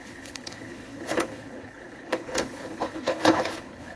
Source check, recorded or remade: remade